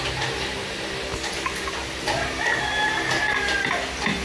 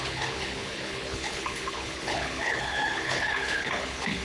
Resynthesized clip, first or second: second